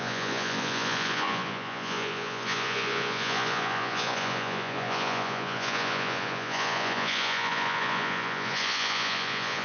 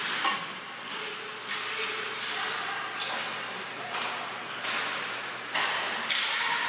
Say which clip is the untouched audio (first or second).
second